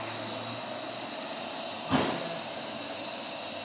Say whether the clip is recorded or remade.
recorded